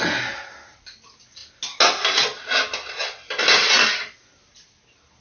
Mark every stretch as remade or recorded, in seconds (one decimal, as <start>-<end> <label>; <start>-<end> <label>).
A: 0.0-5.2 recorded